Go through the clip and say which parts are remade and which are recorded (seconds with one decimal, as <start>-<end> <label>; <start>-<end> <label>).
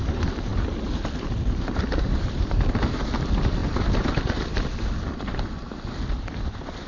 0.0-6.9 recorded